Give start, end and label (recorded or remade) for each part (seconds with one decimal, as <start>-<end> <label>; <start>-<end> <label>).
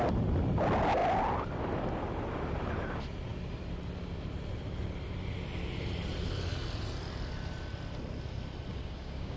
0.0-8.7 recorded; 8.7-9.4 remade